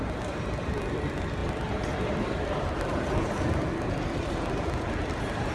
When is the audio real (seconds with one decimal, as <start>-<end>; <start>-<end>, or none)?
0.0-5.5